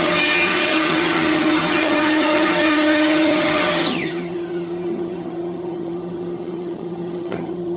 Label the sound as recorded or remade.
remade